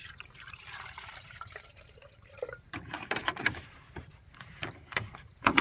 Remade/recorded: remade